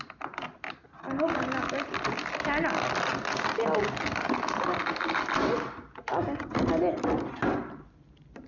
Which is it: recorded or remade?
recorded